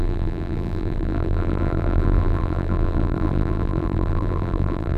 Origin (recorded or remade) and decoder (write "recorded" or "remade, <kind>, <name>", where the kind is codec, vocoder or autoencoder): remade, vocoder, BigVGAN v2